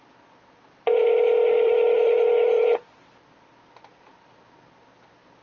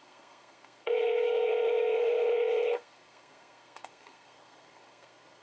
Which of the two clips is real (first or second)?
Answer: first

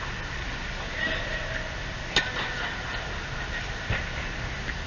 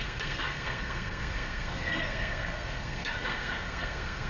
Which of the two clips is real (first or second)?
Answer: first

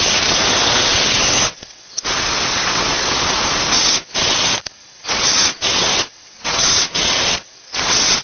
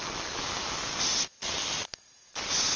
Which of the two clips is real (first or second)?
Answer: second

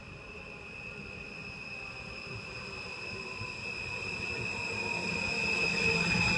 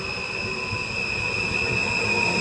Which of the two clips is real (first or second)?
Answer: second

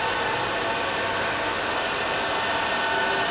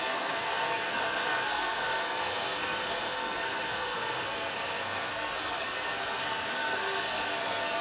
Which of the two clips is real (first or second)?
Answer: first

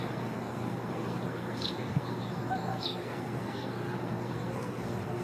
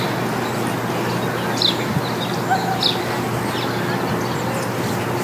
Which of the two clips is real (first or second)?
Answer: second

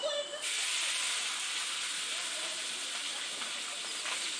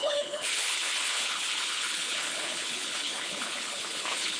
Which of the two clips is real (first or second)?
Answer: first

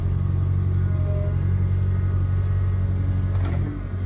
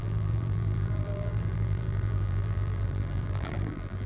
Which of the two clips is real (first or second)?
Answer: first